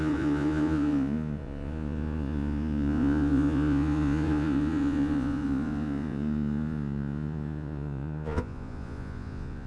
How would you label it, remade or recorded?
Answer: remade